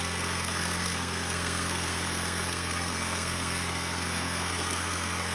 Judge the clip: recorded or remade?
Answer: remade